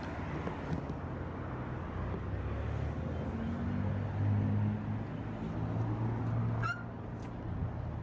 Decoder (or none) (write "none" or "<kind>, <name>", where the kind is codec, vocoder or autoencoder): none